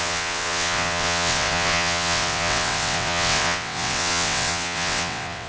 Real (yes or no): no